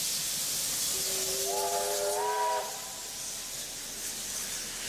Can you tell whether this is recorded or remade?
recorded